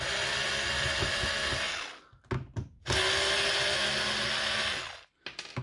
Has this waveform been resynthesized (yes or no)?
no